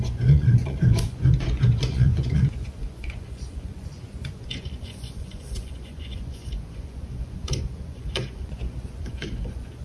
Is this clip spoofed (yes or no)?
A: yes